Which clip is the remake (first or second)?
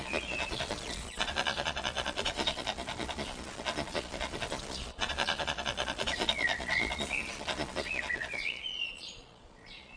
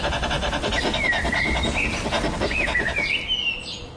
first